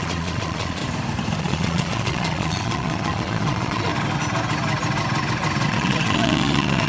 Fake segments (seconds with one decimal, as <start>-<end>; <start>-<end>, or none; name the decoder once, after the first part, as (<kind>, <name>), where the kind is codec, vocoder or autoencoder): 0.0-0.8 (vocoder, Vocos); 1.4-3.9; 5.7-6.9